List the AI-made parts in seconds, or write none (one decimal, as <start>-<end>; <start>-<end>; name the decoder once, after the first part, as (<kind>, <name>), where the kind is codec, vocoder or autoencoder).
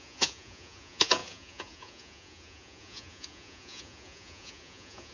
0.0-5.1 (vocoder, Vocos)